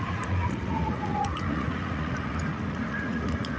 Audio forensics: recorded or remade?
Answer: remade